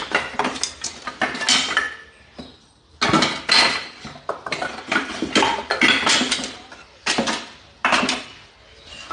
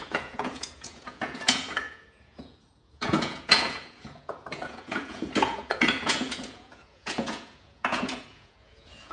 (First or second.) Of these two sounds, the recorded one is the first